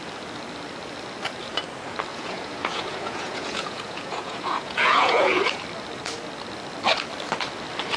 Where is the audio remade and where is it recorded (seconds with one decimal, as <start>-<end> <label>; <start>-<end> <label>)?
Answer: 0.0-2.1 recorded; 2.1-5.6 remade; 5.6-8.0 recorded